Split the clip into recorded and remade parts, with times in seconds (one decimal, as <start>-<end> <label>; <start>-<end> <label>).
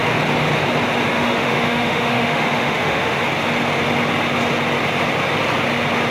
0.0-1.1 recorded; 1.1-3.2 remade; 3.2-6.1 recorded